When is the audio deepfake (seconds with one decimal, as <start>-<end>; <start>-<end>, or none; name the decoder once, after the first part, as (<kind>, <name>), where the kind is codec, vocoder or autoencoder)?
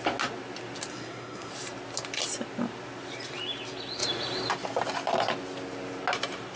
0.9-1.5 (codec, SNAC)